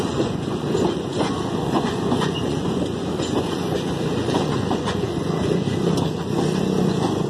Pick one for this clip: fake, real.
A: fake